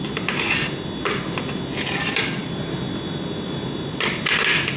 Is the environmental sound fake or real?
real